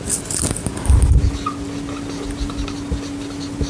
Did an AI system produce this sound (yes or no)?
no